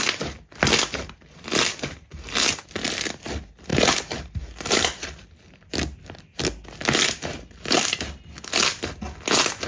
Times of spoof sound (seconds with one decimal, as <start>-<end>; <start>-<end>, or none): none